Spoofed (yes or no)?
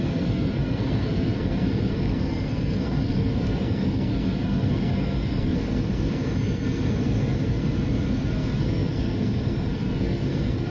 yes